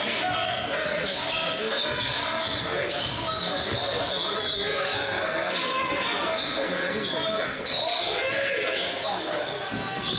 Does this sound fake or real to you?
fake